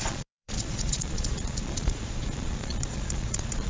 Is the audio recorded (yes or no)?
no